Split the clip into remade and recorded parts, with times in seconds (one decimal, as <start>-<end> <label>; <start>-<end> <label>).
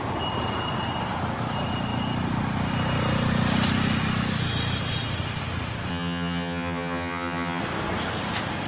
0.0-5.9 recorded; 5.9-7.6 remade; 7.6-8.7 recorded